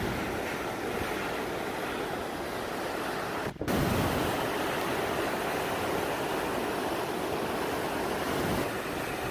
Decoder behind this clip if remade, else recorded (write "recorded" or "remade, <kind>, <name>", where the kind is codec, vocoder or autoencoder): recorded